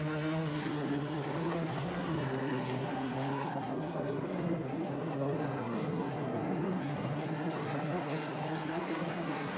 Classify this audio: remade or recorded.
remade